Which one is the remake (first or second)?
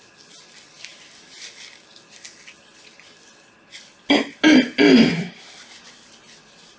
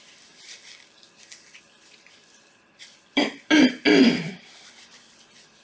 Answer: second